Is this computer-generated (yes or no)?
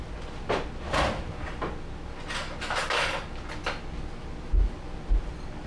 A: no